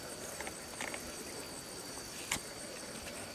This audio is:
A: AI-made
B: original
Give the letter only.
B